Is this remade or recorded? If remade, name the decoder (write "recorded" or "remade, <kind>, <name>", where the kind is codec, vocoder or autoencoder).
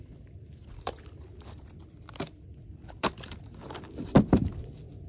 remade, vocoder, BigVGAN v2